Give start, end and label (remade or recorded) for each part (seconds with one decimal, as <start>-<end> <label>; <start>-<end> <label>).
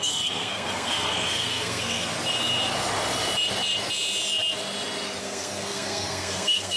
0.0-2.1 remade; 2.1-5.2 recorded; 5.2-6.8 remade